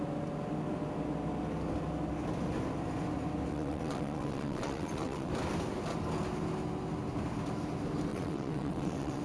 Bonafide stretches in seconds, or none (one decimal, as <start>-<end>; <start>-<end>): 0.0-3.5; 5.3-8.1